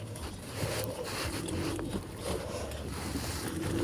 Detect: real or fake real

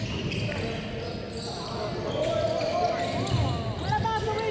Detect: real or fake real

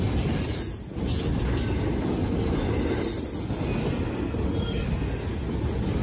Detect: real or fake real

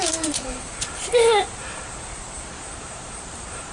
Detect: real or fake fake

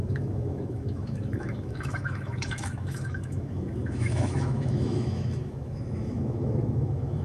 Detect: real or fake fake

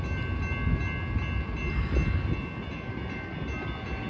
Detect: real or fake real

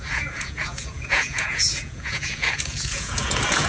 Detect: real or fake fake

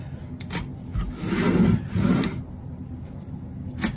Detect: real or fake real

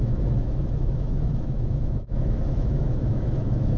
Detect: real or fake fake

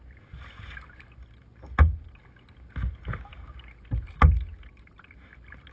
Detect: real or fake real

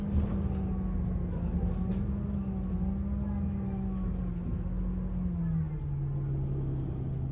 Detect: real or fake real